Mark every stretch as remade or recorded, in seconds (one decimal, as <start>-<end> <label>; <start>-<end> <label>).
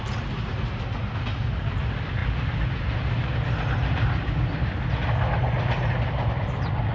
0.0-6.9 recorded